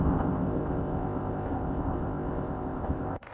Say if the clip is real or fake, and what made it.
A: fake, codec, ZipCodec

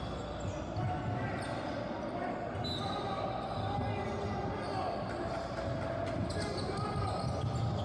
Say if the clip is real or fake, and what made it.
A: real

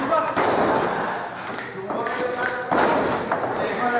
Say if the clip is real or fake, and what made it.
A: real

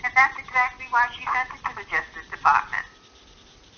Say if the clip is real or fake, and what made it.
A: real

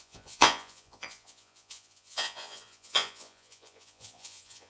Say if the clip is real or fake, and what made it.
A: fake, vocoder, Vocos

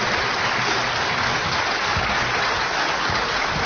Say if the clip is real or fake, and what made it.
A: real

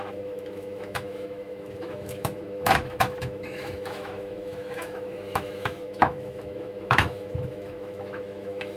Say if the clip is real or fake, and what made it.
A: fake, autoencoder, DAC-VAE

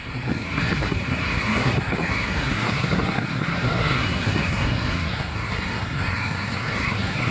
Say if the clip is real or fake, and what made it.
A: fake, codec, SNAC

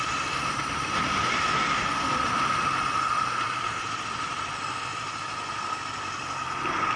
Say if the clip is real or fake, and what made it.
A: real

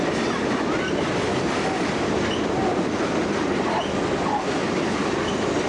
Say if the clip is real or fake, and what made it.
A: real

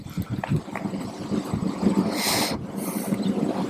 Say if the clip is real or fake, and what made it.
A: real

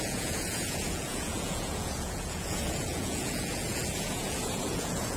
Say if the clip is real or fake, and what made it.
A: fake, vocoder, Vocos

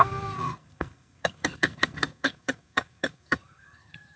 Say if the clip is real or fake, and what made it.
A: fake, codec, SNAC